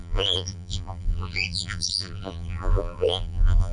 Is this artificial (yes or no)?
yes